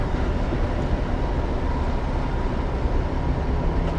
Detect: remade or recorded recorded